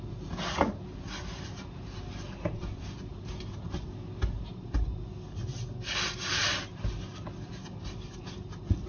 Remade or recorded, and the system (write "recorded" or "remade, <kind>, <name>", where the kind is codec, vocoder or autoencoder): recorded